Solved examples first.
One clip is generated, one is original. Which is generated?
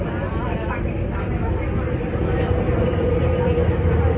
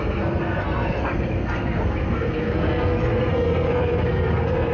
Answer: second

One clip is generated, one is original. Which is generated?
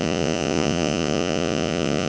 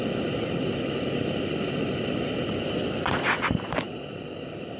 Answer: first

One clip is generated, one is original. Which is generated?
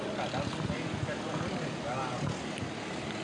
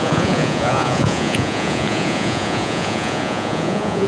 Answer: second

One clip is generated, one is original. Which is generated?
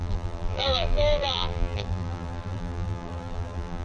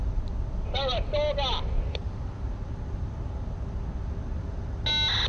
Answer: first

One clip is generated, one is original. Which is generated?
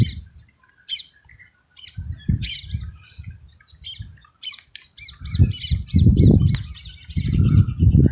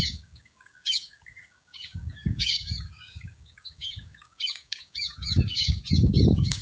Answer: second